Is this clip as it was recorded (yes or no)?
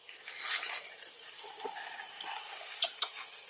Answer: yes